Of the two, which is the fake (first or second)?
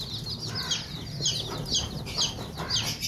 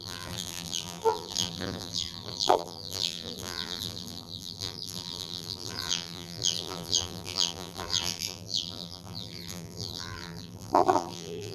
second